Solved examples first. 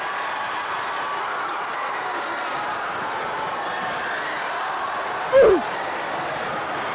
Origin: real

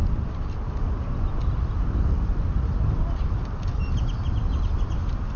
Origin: real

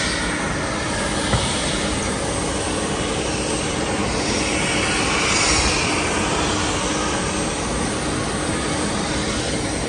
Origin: real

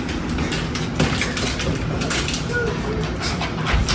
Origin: real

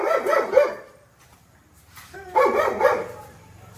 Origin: fake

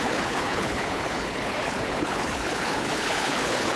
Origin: fake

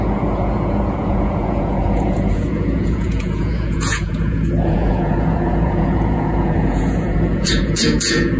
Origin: fake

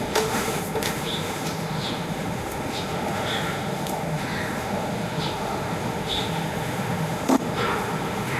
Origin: fake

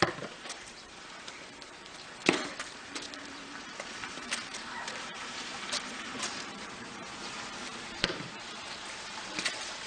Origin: fake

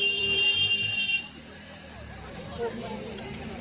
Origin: fake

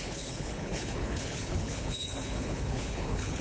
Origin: fake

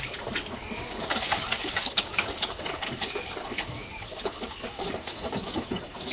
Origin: fake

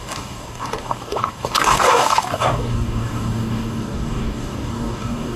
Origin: fake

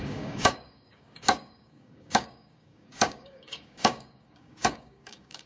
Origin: fake